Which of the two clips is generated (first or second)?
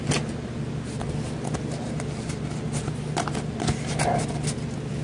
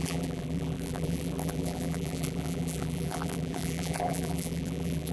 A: second